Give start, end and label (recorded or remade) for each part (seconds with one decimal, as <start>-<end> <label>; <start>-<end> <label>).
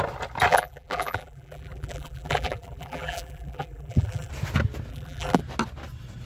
0.0-0.5 recorded; 0.5-4.3 remade; 4.3-4.9 recorded; 4.9-5.4 remade; 5.4-6.3 recorded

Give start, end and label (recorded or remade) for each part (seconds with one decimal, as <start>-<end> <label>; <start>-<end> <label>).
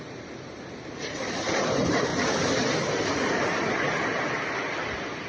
0.0-2.1 remade; 2.1-5.3 recorded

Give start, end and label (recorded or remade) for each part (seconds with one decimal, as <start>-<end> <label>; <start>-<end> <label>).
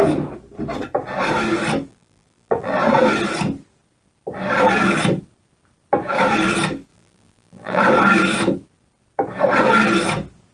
0.0-1.9 recorded; 1.9-2.7 remade; 2.7-6.9 recorded; 6.9-7.8 remade; 7.8-10.5 recorded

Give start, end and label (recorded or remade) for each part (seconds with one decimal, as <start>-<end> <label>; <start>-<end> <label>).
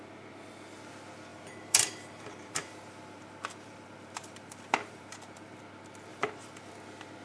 0.0-1.3 recorded; 1.3-5.6 remade; 5.6-6.1 recorded; 6.1-6.7 remade; 6.7-7.2 recorded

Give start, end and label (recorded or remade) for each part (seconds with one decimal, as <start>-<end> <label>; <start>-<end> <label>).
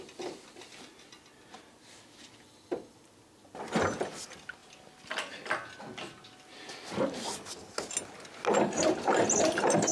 0.0-9.9 recorded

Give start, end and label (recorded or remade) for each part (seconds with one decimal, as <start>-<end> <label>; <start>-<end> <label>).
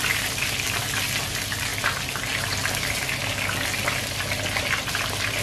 0.0-5.4 recorded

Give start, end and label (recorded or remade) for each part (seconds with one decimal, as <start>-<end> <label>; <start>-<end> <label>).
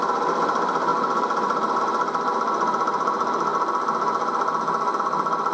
0.0-3.5 remade; 3.5-5.0 recorded; 5.0-5.5 remade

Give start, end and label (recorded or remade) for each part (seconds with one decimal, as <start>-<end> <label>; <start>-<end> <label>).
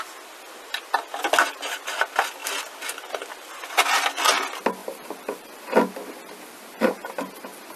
0.0-4.8 recorded; 4.8-5.4 remade; 5.4-7.8 recorded